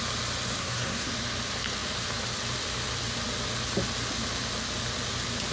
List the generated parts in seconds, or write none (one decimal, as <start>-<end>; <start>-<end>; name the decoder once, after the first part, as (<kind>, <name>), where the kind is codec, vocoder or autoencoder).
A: 0.6-1.1 (codec, SNAC)